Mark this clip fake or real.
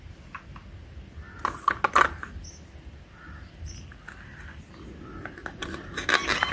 real